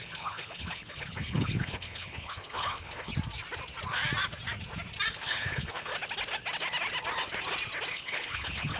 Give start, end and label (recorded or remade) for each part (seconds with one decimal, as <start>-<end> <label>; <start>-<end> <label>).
0.0-3.1 remade; 3.1-5.1 recorded; 5.1-5.9 remade; 5.9-7.9 recorded; 7.9-8.8 remade